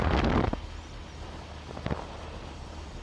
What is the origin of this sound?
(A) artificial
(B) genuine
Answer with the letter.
B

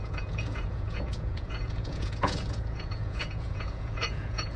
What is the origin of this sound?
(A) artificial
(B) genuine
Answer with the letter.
A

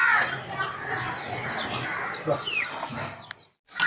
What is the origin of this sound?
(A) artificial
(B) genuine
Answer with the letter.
B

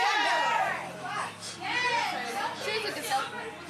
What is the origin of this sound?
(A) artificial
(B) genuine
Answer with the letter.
B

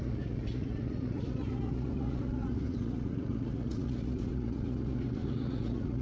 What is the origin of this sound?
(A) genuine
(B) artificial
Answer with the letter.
B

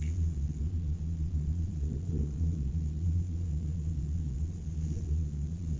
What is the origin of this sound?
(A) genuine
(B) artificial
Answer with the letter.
B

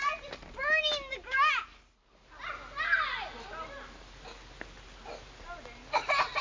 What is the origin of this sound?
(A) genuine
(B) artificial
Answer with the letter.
A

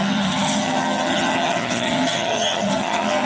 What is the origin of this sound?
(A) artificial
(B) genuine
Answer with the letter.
A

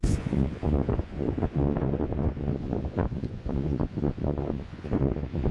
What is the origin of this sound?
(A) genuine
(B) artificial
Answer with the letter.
B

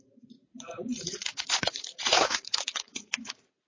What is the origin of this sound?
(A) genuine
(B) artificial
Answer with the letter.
B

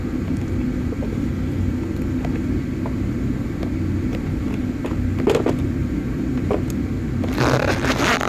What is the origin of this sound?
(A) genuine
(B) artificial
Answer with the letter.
A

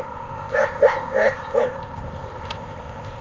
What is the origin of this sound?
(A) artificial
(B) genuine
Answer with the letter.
A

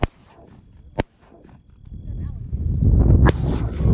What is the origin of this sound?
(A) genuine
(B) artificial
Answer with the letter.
A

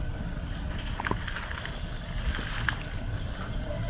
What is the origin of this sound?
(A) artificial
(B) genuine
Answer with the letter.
B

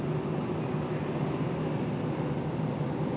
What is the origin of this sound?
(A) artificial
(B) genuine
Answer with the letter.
B